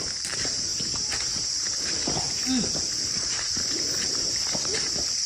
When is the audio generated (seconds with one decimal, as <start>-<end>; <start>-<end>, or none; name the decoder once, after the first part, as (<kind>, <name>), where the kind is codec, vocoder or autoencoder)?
0.0-0.7 (vocoder, BigVGAN v2); 3.9-5.3

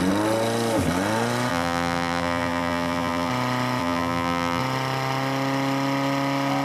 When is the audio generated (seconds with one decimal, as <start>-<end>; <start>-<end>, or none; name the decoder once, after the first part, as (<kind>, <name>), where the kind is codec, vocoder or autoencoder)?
1.5-3.3 (vocoder, BigVGAN v2); 3.8-4.6

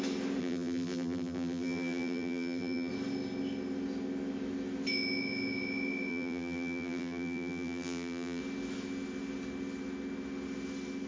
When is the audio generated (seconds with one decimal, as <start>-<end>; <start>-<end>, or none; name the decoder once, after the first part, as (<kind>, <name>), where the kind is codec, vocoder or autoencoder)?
0.4-2.9 (vocoder, BigVGAN v2); 6.1-8.4

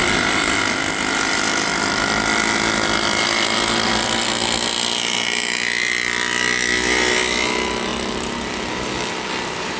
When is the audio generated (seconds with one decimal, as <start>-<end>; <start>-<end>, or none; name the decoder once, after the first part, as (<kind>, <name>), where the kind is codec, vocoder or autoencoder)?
0.0-0.6 (vocoder, BigVGAN v2); 7.9-8.5

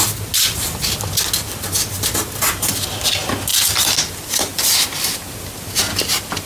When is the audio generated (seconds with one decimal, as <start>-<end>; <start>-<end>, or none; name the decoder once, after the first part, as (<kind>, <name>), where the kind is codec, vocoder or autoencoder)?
none

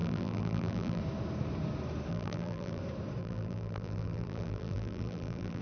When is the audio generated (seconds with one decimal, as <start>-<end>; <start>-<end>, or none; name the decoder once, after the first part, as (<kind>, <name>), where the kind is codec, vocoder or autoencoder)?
0.0-1.0 (vocoder, BigVGAN v2); 2.1-2.8; 3.2-5.6